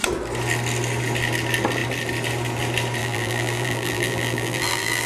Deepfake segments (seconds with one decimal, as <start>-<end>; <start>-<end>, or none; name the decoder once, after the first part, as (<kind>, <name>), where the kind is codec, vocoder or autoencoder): 3.0-5.1 (vocoder, BigVGAN v2)